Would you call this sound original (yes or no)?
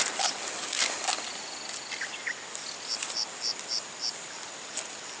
yes